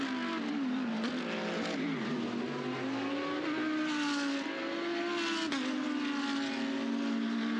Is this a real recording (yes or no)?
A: yes